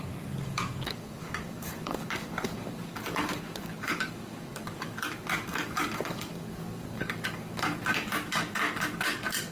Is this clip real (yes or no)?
no